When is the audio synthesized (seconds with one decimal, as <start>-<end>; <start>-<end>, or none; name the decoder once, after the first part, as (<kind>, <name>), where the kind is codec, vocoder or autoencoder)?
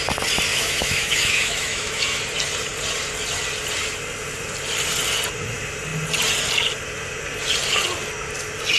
0.5-2.2 (autoencoder, DAC-VAE)